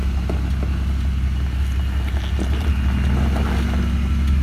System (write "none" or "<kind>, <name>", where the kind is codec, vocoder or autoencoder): none